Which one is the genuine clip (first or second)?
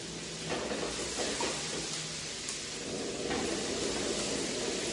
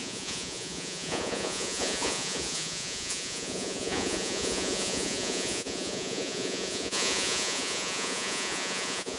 first